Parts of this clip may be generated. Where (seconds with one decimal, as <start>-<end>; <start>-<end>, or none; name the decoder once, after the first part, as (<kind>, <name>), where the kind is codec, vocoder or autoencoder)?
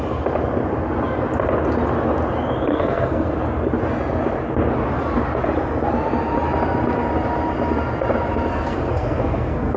2.7-3.3 (codec, SNAC); 8.5-9.8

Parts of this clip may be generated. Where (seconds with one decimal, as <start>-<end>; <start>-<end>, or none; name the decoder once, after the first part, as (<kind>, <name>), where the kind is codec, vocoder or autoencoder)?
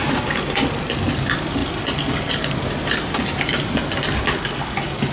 none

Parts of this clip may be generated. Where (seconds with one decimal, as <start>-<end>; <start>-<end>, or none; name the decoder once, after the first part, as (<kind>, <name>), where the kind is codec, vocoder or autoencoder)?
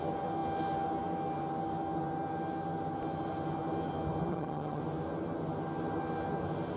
4.3-4.8 (vocoder, HiFi-GAN)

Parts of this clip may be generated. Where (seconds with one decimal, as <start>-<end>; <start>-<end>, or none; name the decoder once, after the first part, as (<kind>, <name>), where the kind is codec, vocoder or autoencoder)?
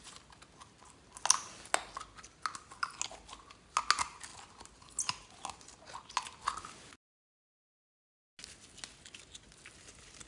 none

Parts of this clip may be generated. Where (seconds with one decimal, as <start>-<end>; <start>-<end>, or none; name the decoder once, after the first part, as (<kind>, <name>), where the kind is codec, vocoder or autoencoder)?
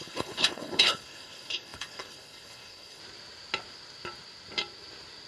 0.0-3.0 (codec, HILCodec)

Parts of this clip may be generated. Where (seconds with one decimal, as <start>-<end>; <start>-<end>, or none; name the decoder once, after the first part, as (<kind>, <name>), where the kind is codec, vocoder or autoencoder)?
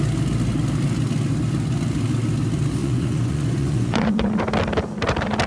2.8-4.3 (vocoder, Vocos)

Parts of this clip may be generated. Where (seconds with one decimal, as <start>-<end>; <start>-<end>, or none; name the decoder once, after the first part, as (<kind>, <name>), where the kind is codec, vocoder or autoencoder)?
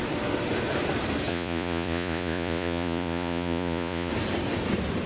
1.3-4.1 (vocoder, Vocos)